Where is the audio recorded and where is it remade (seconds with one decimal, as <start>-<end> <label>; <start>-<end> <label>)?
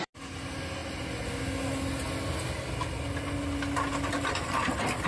0.0-5.1 recorded